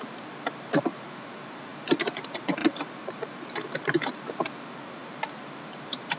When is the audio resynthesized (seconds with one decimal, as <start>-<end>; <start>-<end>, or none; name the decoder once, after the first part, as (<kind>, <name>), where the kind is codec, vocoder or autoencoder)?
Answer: 0.0-6.2 (vocoder, BigVGAN v2)